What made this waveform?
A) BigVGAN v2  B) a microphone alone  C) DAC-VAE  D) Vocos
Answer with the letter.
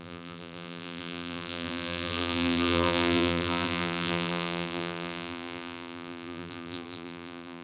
A